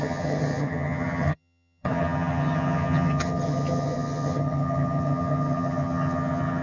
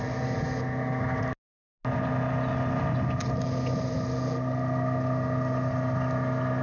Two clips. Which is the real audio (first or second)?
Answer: second